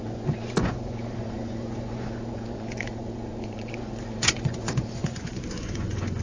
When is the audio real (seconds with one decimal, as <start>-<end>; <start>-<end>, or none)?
none